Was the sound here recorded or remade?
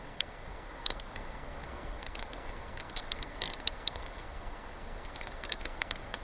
remade